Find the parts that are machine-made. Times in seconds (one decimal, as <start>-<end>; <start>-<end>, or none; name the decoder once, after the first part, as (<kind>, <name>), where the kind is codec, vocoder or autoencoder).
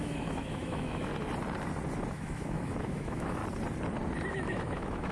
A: 0.0-1.1 (autoencoder, DAC-VAE); 2.1-3.4; 4.3-5.1